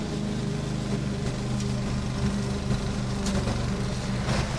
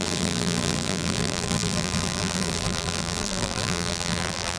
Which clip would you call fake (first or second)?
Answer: second